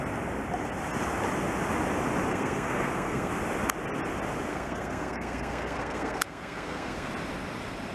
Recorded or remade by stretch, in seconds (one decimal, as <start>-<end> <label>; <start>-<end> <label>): 0.0-2.3 recorded; 2.3-3.3 remade; 3.3-4.5 recorded; 4.5-7.1 remade; 7.1-7.9 recorded